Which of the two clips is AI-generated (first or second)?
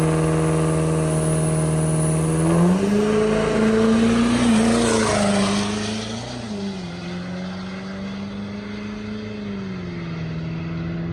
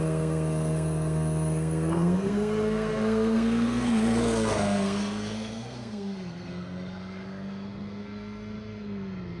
second